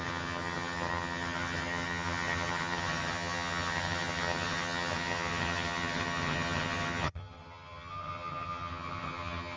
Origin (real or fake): fake